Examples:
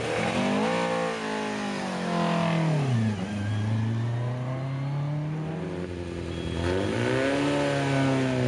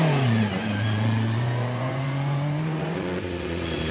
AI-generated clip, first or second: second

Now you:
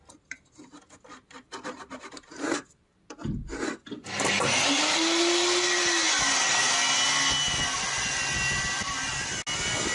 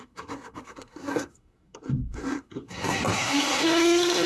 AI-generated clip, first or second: second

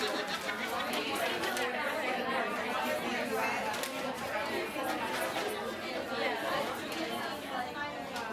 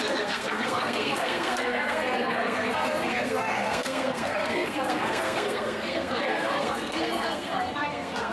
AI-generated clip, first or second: second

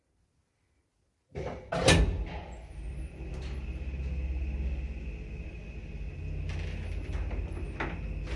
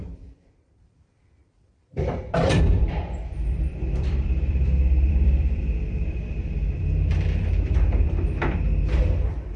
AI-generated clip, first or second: second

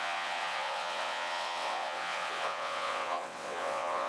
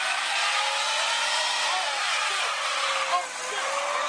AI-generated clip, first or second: first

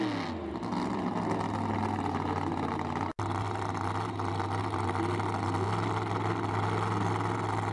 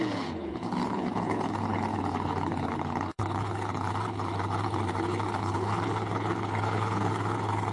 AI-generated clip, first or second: second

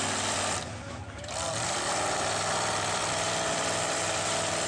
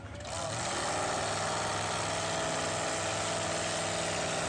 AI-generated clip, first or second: first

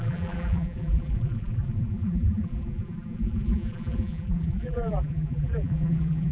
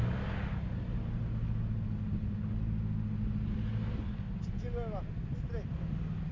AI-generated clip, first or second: first